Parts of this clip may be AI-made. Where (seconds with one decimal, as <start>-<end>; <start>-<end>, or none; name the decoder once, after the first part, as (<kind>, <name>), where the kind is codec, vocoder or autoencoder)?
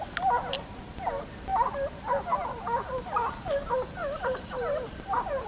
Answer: 4.0-5.5 (vocoder, BigVGAN v2)